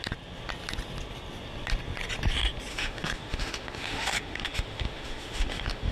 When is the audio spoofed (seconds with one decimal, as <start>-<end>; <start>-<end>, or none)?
2.7-5.9